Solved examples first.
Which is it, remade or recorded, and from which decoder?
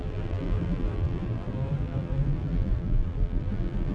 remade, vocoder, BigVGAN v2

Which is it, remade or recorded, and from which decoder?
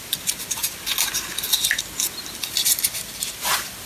recorded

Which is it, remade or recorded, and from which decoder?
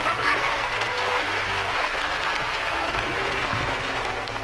remade, codec, SNAC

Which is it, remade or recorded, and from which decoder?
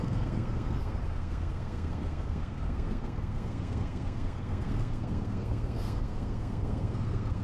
remade, codec, SNAC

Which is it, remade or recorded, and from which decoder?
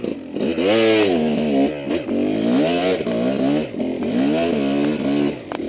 recorded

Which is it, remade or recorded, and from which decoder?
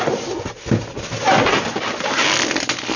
recorded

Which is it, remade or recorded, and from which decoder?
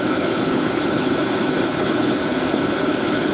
remade, codec, HILCodec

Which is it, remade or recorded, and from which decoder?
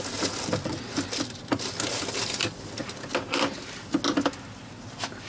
recorded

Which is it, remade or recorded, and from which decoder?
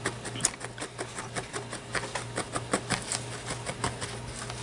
recorded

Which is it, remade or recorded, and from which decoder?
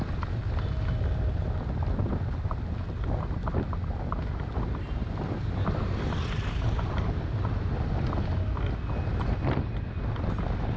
recorded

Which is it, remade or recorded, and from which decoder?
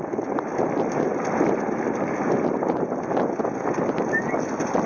recorded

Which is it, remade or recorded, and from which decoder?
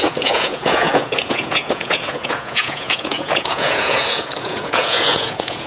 remade, vocoder, Vocos